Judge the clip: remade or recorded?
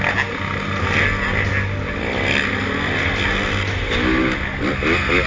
recorded